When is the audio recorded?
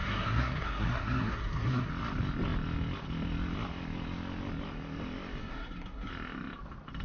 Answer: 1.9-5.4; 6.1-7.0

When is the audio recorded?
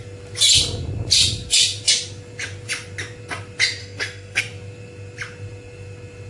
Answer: 0.0-3.8; 4.4-6.3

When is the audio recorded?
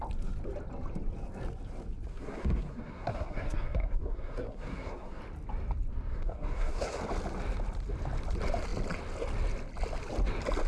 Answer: 0.0-2.1; 5.2-6.1; 7.0-10.7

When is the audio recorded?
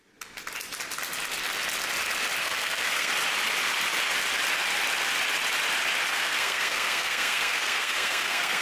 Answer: 0.0-2.4; 3.1-6.1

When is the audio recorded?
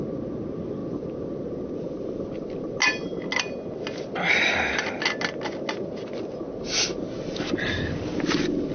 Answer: 0.0-8.7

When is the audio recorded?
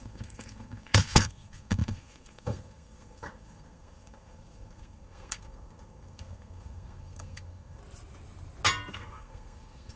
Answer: 7.8-8.9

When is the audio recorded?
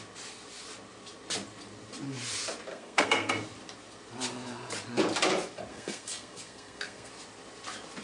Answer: 0.0-2.7; 3.3-5.7; 7.1-8.0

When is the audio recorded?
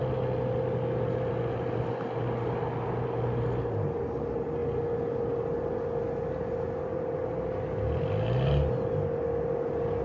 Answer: 0.0-10.0